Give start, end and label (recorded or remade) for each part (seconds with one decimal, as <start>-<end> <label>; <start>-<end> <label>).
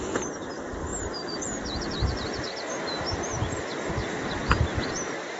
0.0-0.9 recorded; 0.9-2.5 remade; 2.5-5.4 recorded